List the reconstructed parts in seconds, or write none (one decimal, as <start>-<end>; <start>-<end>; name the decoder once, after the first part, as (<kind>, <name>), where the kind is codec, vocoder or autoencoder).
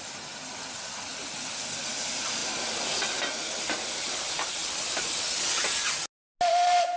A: none